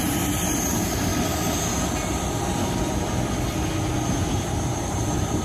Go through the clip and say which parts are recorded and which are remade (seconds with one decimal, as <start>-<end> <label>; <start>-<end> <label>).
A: 0.0-1.1 remade; 1.1-4.3 recorded; 4.3-5.4 remade